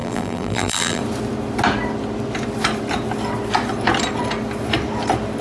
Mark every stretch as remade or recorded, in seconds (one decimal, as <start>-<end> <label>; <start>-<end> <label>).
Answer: 0.0-1.0 remade; 1.0-5.4 recorded